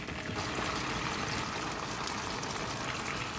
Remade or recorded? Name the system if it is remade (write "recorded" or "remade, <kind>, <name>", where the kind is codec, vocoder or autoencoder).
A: recorded